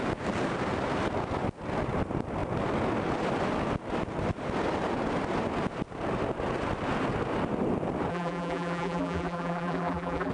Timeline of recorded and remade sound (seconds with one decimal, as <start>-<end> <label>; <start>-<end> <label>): 0.0-8.1 recorded; 8.1-10.3 remade